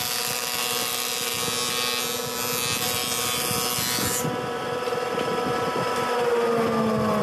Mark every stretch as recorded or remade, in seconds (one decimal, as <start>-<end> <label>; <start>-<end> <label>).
0.0-7.2 recorded